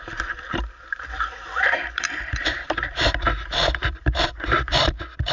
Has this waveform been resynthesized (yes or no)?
yes